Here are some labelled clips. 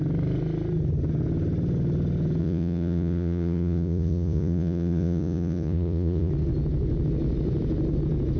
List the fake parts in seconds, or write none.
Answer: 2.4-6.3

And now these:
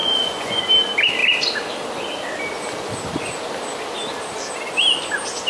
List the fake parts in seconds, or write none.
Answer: 0.0-0.6

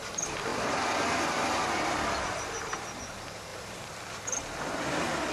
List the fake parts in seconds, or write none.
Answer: 0.0-5.3